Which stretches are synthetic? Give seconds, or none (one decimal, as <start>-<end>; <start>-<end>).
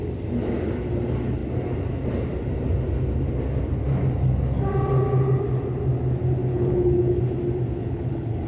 6.5-7.2; 7.8-8.5